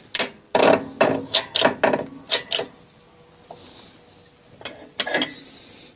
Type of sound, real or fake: real